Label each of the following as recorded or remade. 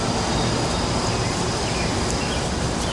recorded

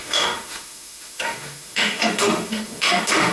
remade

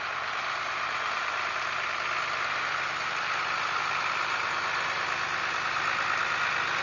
recorded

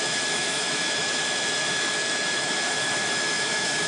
remade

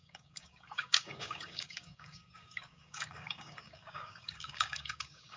remade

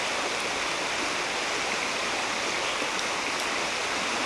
recorded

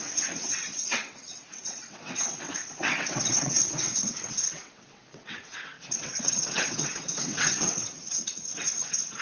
remade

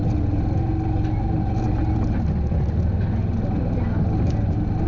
recorded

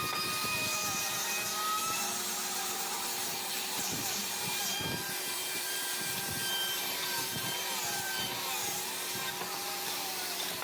remade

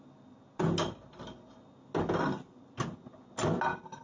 recorded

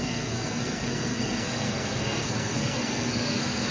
remade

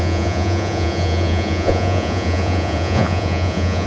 remade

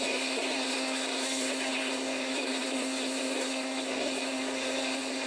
remade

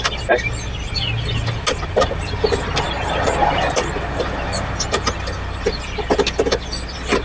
recorded